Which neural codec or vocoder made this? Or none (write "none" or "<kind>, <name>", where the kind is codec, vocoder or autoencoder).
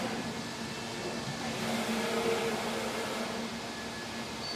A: none